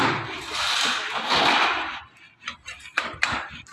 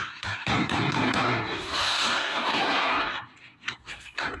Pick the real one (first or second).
first